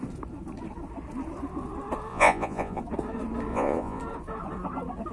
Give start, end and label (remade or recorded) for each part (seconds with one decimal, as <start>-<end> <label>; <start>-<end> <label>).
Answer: 0.0-2.1 recorded; 2.1-2.8 remade; 2.8-3.5 recorded; 3.5-4.0 remade; 4.0-5.1 recorded

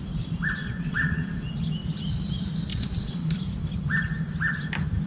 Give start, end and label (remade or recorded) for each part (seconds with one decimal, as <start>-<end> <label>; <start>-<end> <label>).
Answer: 0.0-0.6 recorded; 0.6-1.5 remade; 1.5-2.7 recorded; 2.7-3.3 remade; 3.3-5.1 recorded

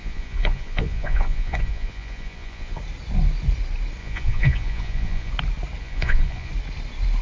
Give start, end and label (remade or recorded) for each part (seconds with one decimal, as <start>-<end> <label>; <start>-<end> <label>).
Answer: 0.0-2.8 remade; 2.8-4.0 recorded; 4.0-5.3 remade; 5.3-5.8 recorded; 5.8-6.5 remade; 6.5-7.2 recorded